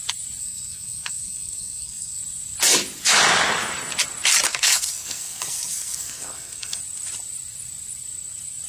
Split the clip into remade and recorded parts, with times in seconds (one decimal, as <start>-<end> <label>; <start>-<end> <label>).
0.0-0.4 recorded; 0.4-2.2 remade; 2.2-4.5 recorded; 4.5-6.8 remade; 6.8-8.7 recorded